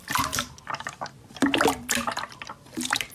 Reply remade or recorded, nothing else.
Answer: recorded